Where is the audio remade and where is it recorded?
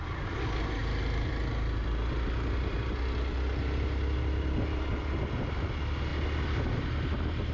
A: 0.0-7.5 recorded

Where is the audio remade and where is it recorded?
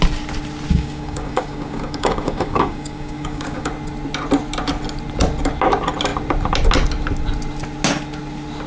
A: 0.0-0.7 recorded; 0.7-3.7 remade; 3.7-8.7 recorded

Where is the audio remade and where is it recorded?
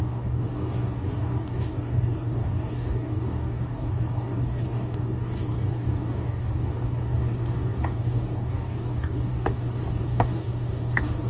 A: 0.0-11.3 remade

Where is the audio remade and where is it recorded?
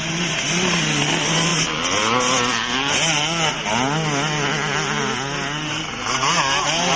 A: 0.0-7.0 recorded